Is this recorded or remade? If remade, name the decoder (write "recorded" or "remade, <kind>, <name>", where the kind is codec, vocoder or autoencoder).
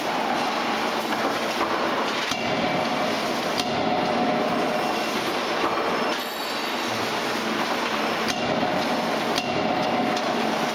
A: recorded